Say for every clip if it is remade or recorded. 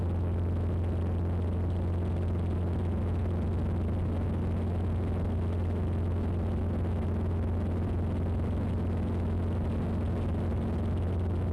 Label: recorded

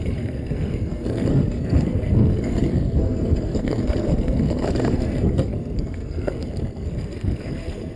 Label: remade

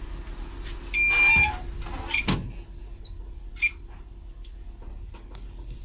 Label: recorded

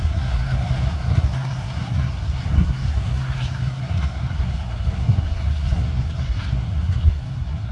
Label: remade